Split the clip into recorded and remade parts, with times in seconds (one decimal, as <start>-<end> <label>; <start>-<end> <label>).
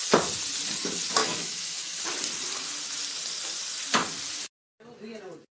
0.0-1.2 recorded; 1.2-2.0 remade; 2.0-5.5 recorded